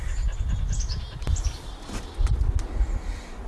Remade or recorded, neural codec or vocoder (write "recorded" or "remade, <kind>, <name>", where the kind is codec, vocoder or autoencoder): recorded